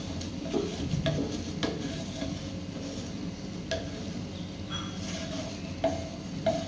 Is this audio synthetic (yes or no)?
yes